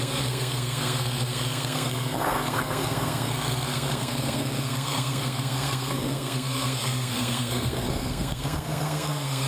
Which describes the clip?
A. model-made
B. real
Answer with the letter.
A